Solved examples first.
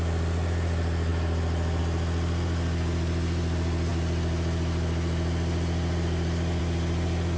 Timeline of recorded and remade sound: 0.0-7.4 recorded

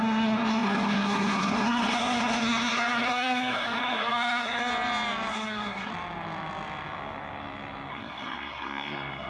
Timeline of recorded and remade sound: 0.0-4.7 remade; 4.7-5.3 recorded; 5.3-5.9 remade; 5.9-7.9 recorded; 7.9-9.3 remade

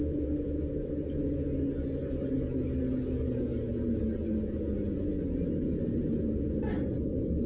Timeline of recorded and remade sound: 0.0-7.5 recorded

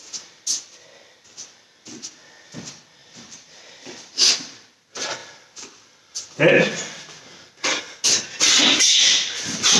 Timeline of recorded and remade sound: 0.0-3.0 recorded; 3.0-4.3 remade; 4.3-9.8 recorded

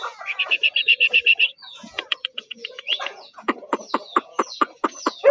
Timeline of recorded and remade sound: 0.0-5.3 remade

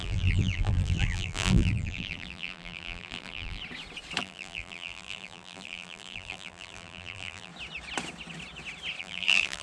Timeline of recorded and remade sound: 0.0-3.6 remade; 3.6-4.2 recorded; 4.2-7.5 remade; 7.5-9.0 recorded; 9.0-9.6 remade

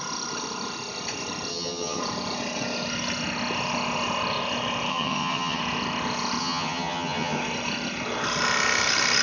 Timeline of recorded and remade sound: 0.0-1.5 recorded; 1.5-2.0 remade; 2.0-4.9 recorded; 4.9-5.6 remade; 5.6-6.4 recorded; 6.4-7.4 remade; 7.4-9.2 recorded